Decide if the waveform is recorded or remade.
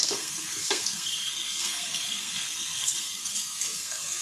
remade